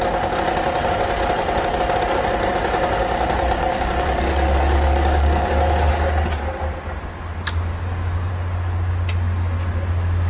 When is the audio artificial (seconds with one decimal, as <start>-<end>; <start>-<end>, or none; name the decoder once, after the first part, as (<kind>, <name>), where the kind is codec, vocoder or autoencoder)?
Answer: 3.6-5.9 (codec, DAC); 7.7-8.3